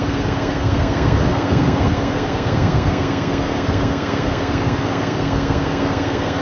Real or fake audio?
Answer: fake